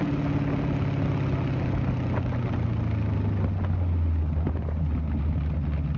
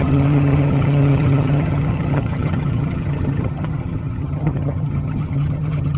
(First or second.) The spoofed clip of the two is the second